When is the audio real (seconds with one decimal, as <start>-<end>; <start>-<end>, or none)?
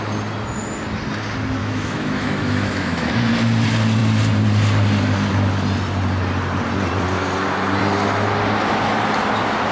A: 0.0-1.6; 3.1-9.7